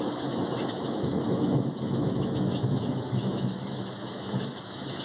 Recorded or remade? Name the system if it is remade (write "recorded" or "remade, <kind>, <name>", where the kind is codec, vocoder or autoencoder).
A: remade, autoencoder, DAC-VAE